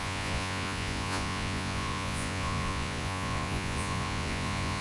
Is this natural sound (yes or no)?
no